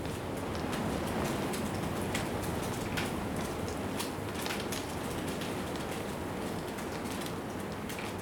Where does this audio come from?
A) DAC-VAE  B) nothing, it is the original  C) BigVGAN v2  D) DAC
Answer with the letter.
B